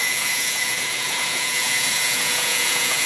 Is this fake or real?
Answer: fake